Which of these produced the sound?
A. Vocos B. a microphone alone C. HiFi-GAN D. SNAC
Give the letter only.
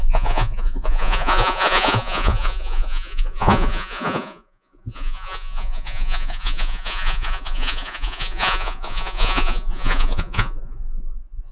A